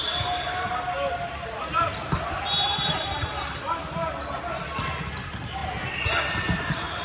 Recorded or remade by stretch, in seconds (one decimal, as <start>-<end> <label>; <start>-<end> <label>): 0.0-1.7 recorded; 1.7-3.2 remade; 3.2-5.6 recorded; 5.6-6.6 remade; 6.6-7.0 recorded